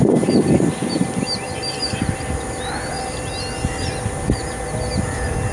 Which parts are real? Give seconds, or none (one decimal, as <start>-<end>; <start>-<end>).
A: 3.3-5.5